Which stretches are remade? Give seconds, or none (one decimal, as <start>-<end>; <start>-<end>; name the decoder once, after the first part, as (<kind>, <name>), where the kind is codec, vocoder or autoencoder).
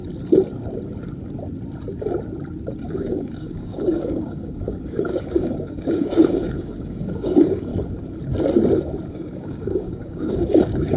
2.9-7.7 (codec, DAC); 9.1-11.0